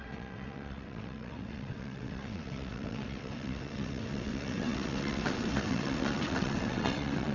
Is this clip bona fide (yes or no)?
no